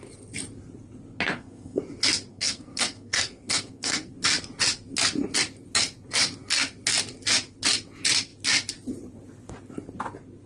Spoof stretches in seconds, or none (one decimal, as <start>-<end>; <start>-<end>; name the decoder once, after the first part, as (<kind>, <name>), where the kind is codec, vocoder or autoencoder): 1.3-1.8 (codec, SNAC); 2.3-4.1